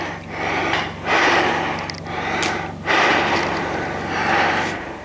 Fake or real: real